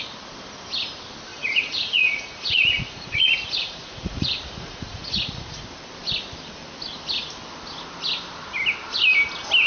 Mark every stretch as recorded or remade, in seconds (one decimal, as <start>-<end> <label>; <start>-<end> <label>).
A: 0.0-1.3 recorded; 1.3-5.6 remade; 5.6-9.7 recorded